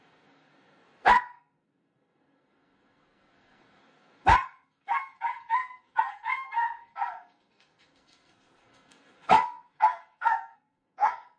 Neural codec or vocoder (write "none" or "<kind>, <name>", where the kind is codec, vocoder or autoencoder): codec, SNAC